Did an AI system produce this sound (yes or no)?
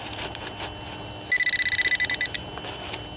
no